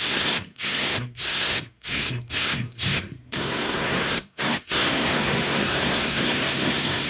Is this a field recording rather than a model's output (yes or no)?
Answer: no